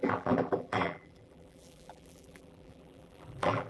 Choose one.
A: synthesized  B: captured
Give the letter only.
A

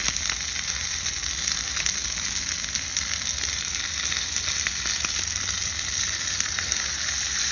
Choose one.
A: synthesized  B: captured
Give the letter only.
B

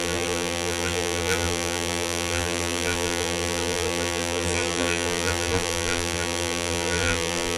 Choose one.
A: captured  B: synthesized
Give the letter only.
B